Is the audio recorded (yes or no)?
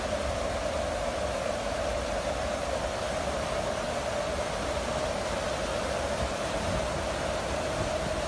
yes